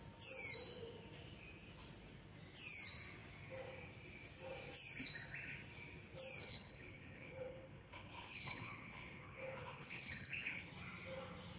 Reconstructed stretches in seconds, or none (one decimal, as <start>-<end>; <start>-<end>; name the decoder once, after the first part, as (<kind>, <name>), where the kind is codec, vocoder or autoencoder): 6.4-10.7 (codec, HILCodec)